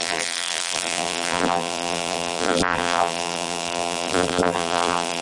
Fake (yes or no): yes